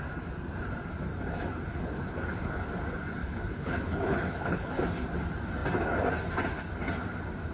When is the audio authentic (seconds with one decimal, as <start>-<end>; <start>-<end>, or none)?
0.0-1.7; 2.7-3.2; 4.8-7.5